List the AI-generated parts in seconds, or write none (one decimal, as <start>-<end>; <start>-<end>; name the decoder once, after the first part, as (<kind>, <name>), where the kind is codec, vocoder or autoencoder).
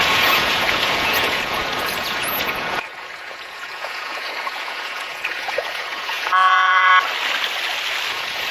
0.0-6.9 (vocoder, Vocos); 8.1-8.5